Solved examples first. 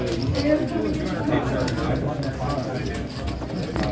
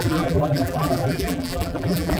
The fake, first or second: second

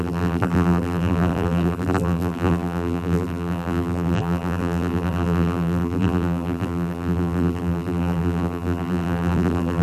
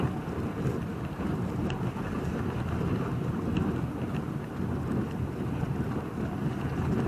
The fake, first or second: first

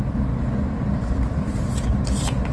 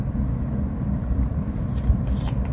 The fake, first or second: second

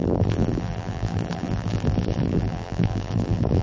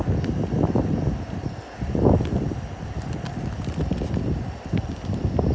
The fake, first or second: first